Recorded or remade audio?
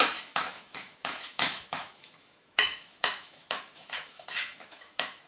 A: remade